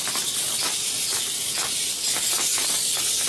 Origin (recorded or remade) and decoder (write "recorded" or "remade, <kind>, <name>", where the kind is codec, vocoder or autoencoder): recorded